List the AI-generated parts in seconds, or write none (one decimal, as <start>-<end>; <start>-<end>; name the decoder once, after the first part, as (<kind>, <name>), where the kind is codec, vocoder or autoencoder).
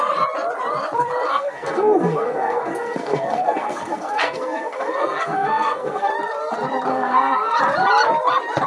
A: 1.3-6.1 (codec, SNAC); 6.9-7.6